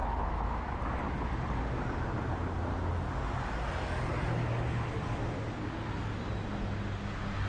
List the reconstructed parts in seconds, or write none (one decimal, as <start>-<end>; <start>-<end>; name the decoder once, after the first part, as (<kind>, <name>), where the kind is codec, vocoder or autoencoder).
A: 0.0-0.7 (autoencoder, DAC-VAE)